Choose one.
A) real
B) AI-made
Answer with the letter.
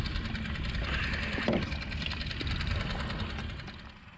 A